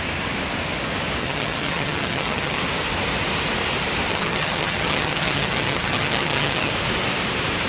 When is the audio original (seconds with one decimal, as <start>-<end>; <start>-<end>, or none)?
0.0-1.2; 2.6-4.1; 6.7-7.7